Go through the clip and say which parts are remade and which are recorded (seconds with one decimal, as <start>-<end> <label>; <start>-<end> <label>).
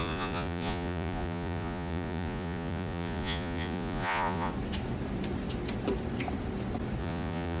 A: 0.0-4.5 remade; 4.5-7.0 recorded; 7.0-7.6 remade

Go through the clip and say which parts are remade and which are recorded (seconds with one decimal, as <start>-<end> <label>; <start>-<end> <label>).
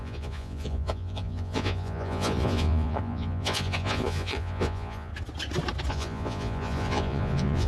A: 0.0-5.1 remade; 5.1-5.9 recorded; 5.9-7.7 remade